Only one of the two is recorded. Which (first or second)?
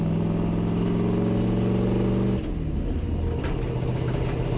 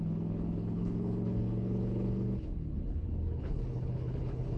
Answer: first